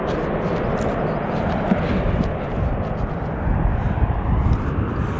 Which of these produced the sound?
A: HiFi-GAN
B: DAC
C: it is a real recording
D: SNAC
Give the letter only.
C